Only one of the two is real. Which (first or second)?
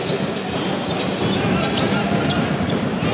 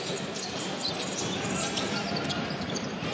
first